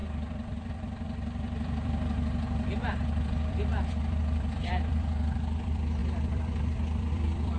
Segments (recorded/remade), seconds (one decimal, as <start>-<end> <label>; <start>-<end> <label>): 0.0-7.6 remade